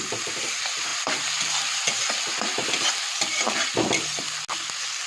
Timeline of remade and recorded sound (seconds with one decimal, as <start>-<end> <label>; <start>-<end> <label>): 0.0-5.1 recorded